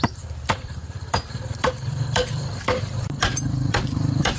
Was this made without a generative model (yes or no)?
no